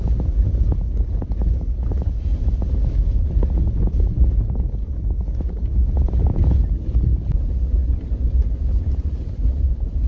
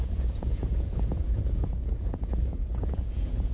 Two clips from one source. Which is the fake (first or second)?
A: second